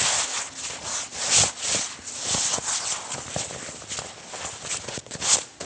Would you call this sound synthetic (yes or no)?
no